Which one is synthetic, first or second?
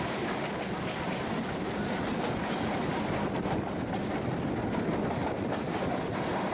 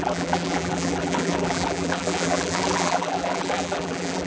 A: second